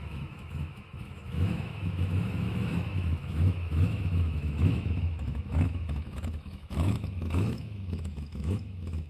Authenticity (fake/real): fake